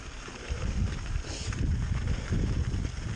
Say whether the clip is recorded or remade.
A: remade